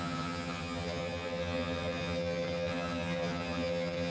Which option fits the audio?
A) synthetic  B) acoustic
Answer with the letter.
A